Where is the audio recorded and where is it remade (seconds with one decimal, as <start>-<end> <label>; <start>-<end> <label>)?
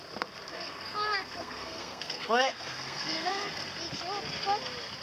0.0-0.5 recorded; 0.5-3.5 remade; 3.5-5.0 recorded